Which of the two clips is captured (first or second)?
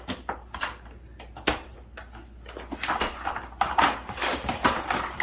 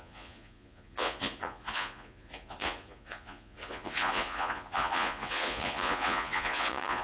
first